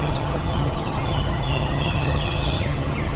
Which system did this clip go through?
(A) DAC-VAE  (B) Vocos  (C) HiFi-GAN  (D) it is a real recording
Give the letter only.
C